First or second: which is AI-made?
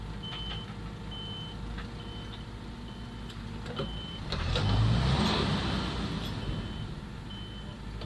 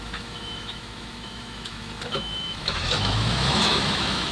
second